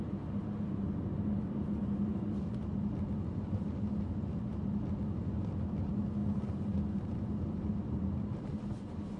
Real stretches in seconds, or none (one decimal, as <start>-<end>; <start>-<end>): 0.0-9.2